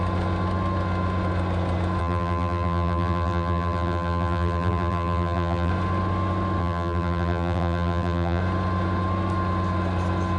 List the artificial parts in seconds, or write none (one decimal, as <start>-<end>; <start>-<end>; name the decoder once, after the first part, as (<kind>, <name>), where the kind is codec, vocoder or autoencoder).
2.0-5.7 (vocoder, BigVGAN v2); 6.6-8.4